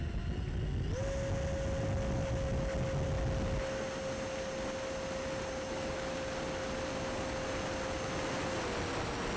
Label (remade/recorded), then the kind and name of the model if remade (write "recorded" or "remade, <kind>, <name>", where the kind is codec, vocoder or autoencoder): recorded